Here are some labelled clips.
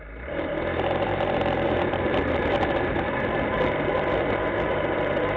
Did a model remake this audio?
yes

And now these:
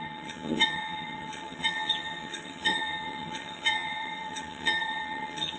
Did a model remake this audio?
yes